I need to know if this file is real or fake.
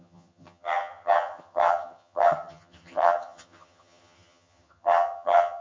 fake